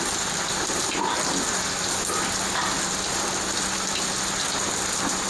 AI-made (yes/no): no